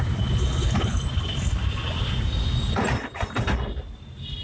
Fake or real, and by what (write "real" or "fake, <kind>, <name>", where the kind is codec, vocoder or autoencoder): real